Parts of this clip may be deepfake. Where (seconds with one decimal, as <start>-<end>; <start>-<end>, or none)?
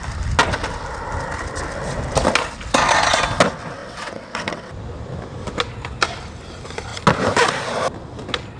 3.8-4.7